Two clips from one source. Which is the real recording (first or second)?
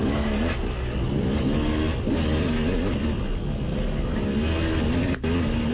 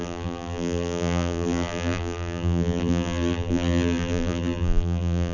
first